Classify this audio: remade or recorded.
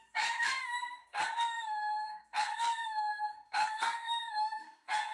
remade